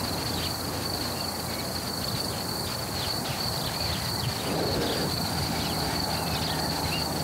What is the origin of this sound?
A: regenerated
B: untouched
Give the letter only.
B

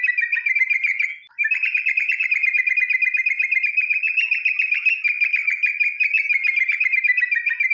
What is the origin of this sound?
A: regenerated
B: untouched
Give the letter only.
B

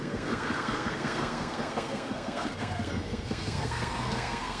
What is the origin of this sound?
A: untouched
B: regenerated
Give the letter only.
B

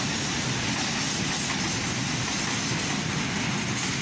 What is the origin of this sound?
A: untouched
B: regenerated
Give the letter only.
A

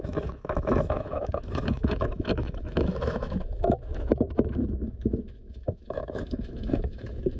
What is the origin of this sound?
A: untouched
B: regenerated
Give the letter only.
B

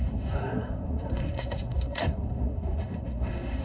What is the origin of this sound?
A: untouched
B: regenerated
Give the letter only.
B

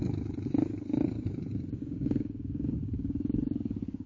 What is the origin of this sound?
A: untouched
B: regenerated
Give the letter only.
B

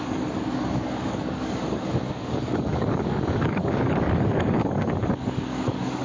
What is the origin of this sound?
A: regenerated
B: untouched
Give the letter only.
A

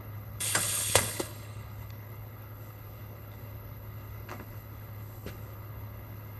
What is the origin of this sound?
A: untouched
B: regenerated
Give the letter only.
B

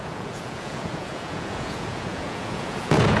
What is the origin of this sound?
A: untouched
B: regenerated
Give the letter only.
B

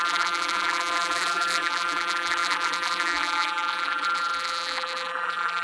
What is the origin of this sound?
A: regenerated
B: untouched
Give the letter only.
A